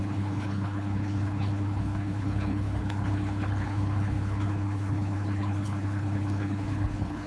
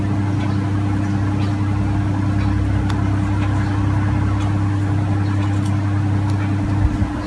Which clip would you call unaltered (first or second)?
second